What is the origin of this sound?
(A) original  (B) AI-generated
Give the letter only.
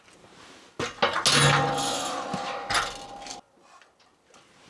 A